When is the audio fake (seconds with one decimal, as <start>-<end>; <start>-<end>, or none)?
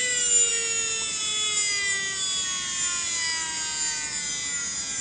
none